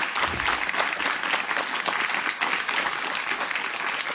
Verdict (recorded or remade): recorded